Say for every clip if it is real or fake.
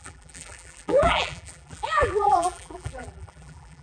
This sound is fake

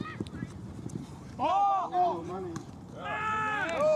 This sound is fake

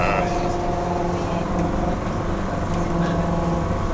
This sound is real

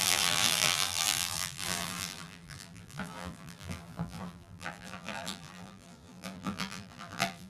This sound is fake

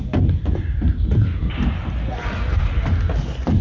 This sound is real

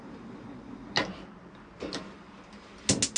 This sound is real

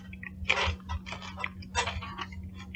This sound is real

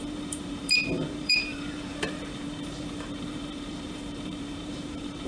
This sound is fake